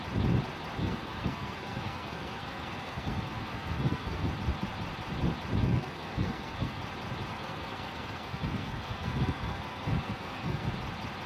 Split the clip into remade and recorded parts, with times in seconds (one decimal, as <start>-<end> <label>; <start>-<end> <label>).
0.0-0.8 recorded; 0.8-4.3 remade; 4.3-5.6 recorded; 5.6-6.8 remade; 6.8-7.3 recorded; 7.3-10.7 remade; 10.7-11.3 recorded